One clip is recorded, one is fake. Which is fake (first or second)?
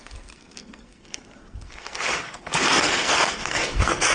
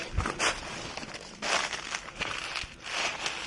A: first